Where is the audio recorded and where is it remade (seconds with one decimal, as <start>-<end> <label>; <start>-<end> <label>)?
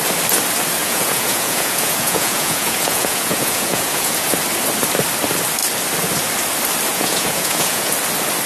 0.0-0.8 recorded; 0.8-4.3 remade; 4.3-6.9 recorded; 6.9-7.9 remade; 7.9-8.5 recorded